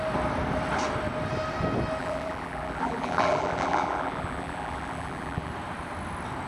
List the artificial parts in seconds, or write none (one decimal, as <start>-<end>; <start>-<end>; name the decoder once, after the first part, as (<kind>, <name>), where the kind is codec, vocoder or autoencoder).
2.0-5.5 (vocoder, BigVGAN v2)